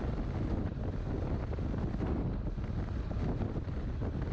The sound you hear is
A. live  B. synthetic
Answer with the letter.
A